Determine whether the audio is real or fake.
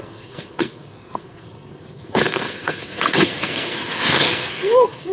fake